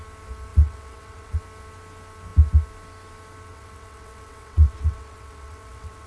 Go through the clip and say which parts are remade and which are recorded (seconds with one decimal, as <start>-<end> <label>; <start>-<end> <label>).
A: 0.0-0.5 recorded; 0.5-1.4 remade; 1.4-3.5 recorded; 3.5-6.1 remade